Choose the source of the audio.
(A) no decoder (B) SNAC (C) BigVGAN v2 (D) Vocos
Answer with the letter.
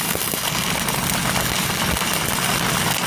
A